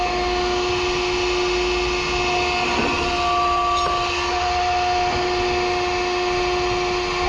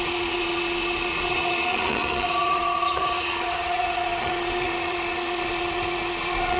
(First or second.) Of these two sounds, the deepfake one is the second